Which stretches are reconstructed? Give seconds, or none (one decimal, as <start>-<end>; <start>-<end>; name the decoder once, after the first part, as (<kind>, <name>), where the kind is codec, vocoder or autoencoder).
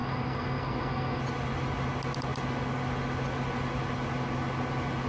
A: 0.0-1.2 (codec, SNAC)